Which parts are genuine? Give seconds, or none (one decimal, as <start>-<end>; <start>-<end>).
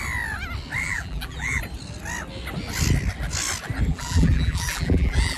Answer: 0.0-0.8; 1.6-3.9